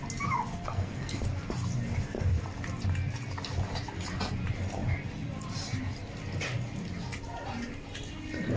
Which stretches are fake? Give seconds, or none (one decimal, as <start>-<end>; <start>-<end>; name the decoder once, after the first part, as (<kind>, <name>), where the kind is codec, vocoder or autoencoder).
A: 0.5-1.2 (codec, SNAC)